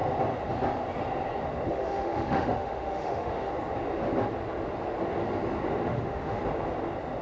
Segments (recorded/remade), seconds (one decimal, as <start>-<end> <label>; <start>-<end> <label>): 0.0-1.7 recorded; 1.7-3.5 remade; 3.5-5.8 recorded; 5.8-6.4 remade; 6.4-7.2 recorded